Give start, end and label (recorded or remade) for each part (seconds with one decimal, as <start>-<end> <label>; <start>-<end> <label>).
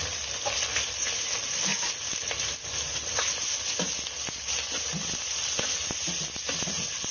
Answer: 0.0-7.1 recorded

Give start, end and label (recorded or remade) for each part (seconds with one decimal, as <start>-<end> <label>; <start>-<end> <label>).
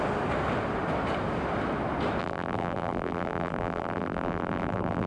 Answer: 0.0-2.2 recorded; 2.2-5.1 remade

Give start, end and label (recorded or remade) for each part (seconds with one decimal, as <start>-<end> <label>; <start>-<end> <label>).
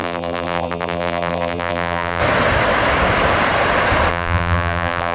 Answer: 0.0-2.2 remade; 2.2-4.1 recorded; 4.1-5.1 remade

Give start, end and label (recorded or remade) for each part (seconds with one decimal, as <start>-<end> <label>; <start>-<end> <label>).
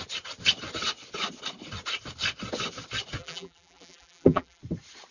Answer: 0.0-3.2 recorded; 3.2-4.6 remade; 4.6-5.1 recorded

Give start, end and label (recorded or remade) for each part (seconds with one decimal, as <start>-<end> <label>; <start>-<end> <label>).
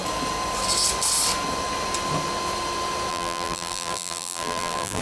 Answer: 0.0-3.1 recorded; 3.1-5.0 remade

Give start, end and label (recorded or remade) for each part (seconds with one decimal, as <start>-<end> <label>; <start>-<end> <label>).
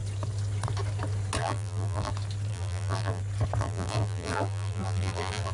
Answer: 0.0-1.4 recorded; 1.4-2.1 remade; 2.1-2.5 recorded; 2.5-3.2 remade; 3.2-3.6 recorded; 3.6-5.5 remade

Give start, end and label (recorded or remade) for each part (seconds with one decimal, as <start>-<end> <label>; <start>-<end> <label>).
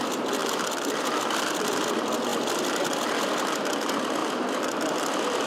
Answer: 0.0-0.4 recorded; 0.4-1.2 remade; 1.2-4.2 recorded; 4.2-5.5 remade